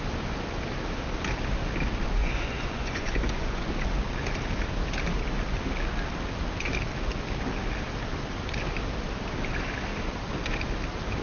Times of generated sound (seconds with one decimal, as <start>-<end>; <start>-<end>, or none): 2.2-3.7